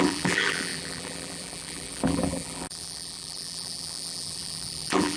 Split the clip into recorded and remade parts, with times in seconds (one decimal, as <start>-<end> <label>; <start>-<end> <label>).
0.0-5.2 remade